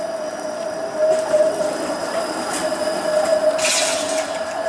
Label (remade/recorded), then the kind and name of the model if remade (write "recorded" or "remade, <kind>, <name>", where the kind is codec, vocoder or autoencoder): recorded